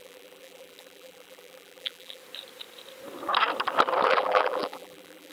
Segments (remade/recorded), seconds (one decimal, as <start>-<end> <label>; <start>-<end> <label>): 0.0-2.2 remade; 2.2-4.1 recorded; 4.1-5.3 remade